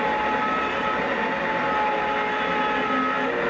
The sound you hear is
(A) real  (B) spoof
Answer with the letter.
A